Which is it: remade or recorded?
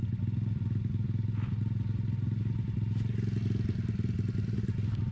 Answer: recorded